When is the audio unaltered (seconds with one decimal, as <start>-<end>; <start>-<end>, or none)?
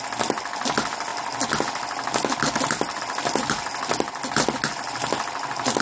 0.0-5.8